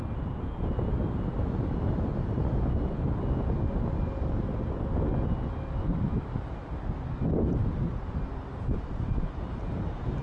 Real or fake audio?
real